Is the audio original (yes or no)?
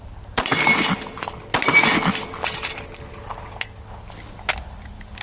yes